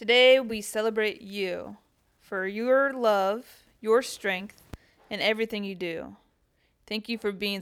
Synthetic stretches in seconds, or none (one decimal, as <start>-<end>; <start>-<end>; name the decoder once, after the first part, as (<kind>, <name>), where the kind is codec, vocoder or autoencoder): none

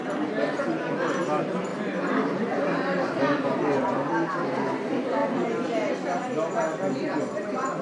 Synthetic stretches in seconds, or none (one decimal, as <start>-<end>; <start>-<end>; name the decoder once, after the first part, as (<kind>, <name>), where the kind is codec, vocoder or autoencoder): 1.7-4.1 (vocoder, BigVGAN v2)